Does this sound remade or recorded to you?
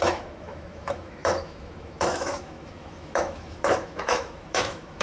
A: remade